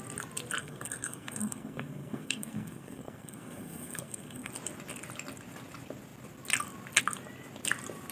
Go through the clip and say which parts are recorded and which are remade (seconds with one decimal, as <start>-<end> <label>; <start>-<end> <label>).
0.0-0.6 recorded; 0.6-4.5 remade; 4.5-8.1 recorded